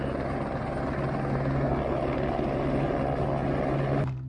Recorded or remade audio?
recorded